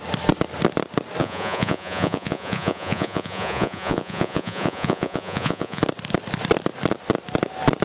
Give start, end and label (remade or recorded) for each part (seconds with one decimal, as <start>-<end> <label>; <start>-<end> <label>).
0.0-1.2 recorded; 1.2-5.8 remade; 5.8-7.8 recorded